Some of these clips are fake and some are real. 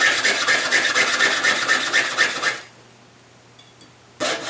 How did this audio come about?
real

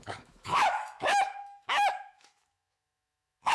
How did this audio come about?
fake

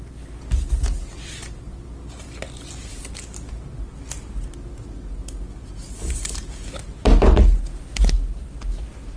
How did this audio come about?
real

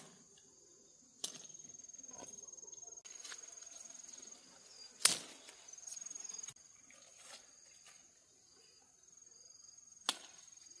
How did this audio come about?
real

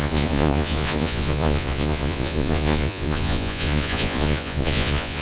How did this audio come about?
fake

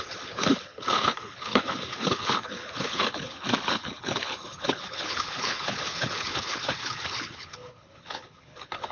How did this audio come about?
fake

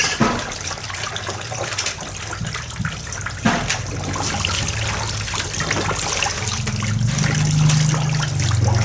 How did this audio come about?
real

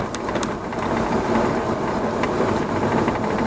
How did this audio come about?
real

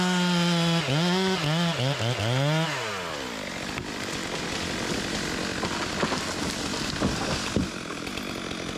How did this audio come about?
real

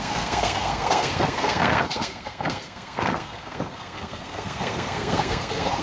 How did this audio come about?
fake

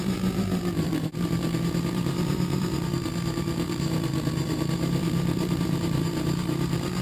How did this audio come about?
fake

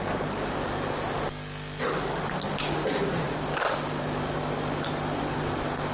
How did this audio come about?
real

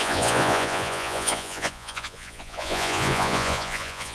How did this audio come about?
fake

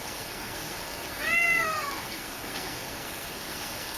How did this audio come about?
fake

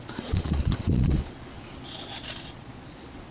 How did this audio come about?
fake